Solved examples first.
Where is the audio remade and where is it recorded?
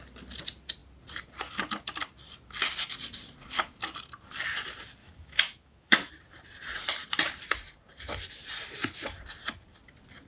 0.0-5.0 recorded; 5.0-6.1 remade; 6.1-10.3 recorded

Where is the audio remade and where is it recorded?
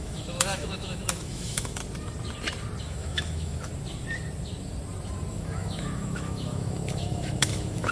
0.0-1.8 remade; 1.8-2.8 recorded; 2.8-3.7 remade; 3.7-5.3 recorded; 5.3-7.9 remade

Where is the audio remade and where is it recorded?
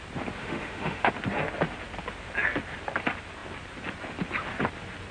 0.0-0.4 recorded; 0.4-1.1 remade; 1.1-5.1 recorded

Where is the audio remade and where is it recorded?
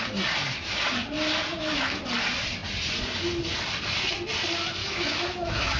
0.0-1.5 recorded; 1.5-2.0 remade; 2.0-4.8 recorded; 4.8-5.8 remade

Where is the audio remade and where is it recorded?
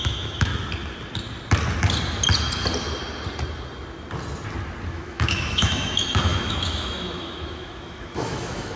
0.0-0.5 remade; 0.5-4.9 recorded; 4.9-8.8 remade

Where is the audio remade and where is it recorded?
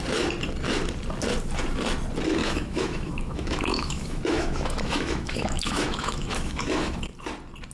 0.0-2.4 recorded; 2.4-7.0 remade; 7.0-7.7 recorded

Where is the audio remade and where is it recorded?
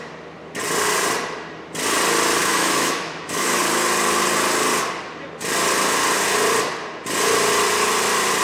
0.0-2.4 recorded; 2.4-3.6 remade; 3.6-8.4 recorded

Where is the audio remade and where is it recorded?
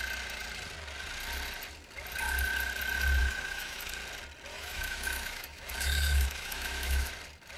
0.0-3.2 recorded; 3.2-3.9 remade; 3.9-4.5 recorded; 4.5-7.1 remade; 7.1-7.6 recorded